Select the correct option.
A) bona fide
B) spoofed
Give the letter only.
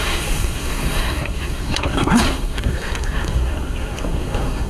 B